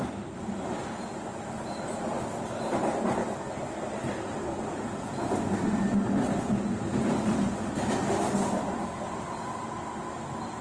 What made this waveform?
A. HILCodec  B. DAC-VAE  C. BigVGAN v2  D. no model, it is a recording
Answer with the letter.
D